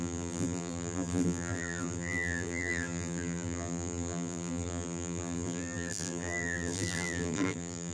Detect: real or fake fake